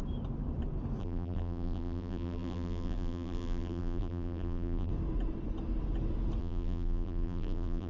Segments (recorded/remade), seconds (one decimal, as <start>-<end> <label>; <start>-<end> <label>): 0.0-1.0 recorded; 1.0-4.9 remade; 4.9-6.4 recorded; 6.4-7.9 remade